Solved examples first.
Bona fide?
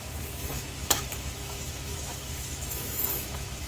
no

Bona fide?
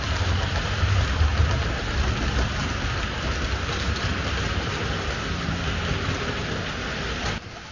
yes